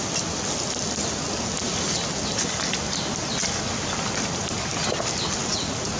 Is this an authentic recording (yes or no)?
yes